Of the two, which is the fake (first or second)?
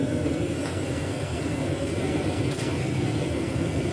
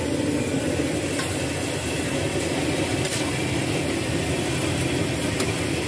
first